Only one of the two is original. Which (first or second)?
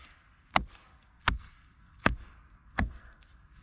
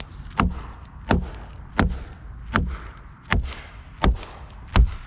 second